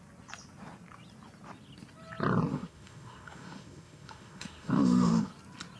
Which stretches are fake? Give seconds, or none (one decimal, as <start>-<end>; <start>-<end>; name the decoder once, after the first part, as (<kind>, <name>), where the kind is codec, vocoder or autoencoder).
2.5-5.3 (autoencoder, DAC-VAE)